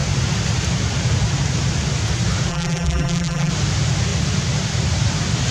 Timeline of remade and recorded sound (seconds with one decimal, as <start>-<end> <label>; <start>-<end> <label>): 0.0-2.5 recorded; 2.5-3.5 remade; 3.5-5.5 recorded